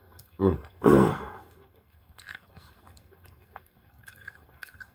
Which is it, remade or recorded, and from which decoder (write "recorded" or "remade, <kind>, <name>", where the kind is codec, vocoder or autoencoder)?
remade, codec, SNAC